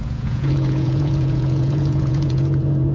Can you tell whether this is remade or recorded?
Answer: remade